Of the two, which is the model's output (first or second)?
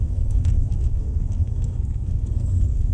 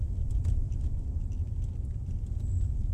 first